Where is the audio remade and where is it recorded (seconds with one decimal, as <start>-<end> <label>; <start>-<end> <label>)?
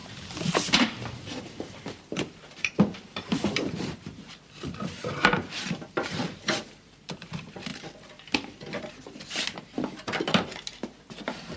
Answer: 0.0-11.6 remade